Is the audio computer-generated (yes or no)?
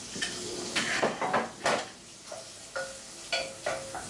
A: no